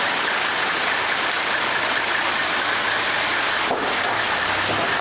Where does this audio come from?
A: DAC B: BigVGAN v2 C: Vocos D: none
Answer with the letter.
D